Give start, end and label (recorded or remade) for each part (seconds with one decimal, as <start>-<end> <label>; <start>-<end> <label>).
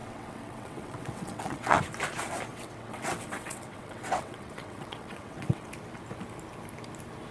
0.0-1.8 remade; 1.8-2.5 recorded; 2.5-5.7 remade; 5.7-7.3 recorded